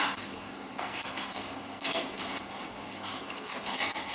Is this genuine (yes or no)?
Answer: no